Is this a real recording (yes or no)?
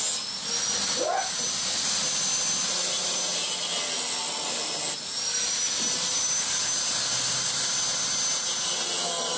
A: yes